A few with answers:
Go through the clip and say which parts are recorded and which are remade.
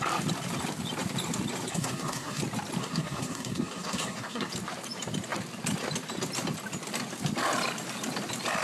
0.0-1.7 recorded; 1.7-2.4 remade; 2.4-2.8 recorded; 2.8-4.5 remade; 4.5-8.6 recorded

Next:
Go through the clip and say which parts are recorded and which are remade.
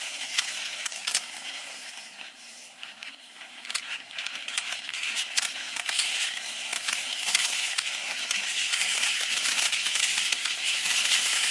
0.0-11.5 remade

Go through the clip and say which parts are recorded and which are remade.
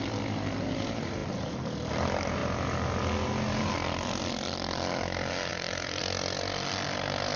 0.0-5.5 recorded; 5.5-6.0 remade; 6.0-7.4 recorded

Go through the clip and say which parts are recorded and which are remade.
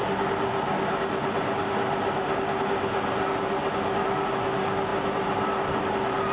0.0-6.3 recorded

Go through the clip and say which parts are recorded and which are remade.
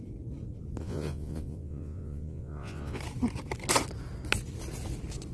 0.0-0.8 recorded; 0.8-3.0 remade; 3.0-5.3 recorded